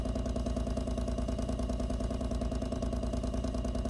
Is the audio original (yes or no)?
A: no